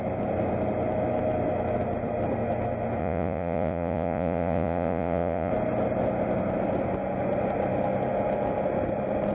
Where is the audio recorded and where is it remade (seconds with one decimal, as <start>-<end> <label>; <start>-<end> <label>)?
0.0-3.0 recorded; 3.0-5.5 remade; 5.5-9.3 recorded